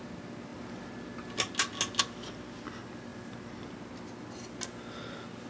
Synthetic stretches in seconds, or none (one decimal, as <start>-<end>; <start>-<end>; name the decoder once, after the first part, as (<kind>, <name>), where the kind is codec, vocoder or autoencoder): none